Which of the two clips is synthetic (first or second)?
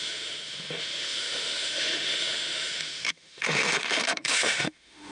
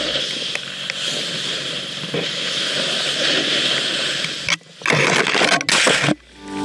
first